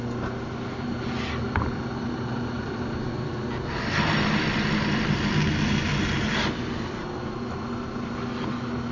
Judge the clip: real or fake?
real